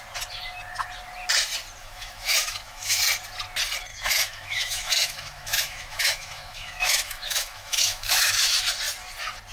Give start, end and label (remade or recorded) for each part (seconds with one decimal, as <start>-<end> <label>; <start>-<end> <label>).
0.0-1.8 recorded; 1.8-3.0 remade; 3.0-3.9 recorded; 3.9-8.6 remade; 8.6-9.5 recorded